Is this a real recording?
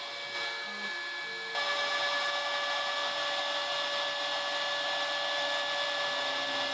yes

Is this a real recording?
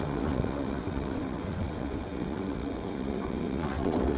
no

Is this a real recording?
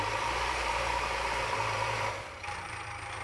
no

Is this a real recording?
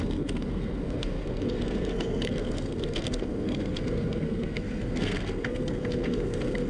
no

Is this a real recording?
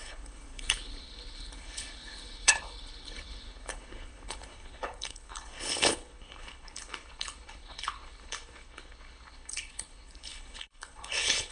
no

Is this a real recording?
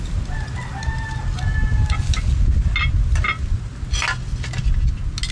yes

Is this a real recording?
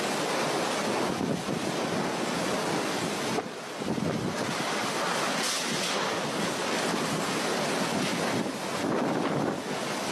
yes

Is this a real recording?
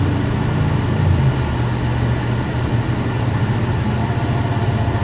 yes